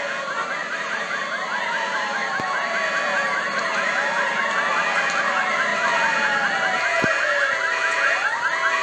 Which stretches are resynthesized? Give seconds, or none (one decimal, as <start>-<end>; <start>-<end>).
none